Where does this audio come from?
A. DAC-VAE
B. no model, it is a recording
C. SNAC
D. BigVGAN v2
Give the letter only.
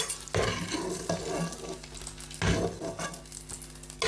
B